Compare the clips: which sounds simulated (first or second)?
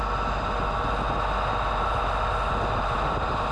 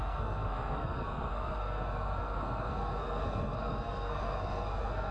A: second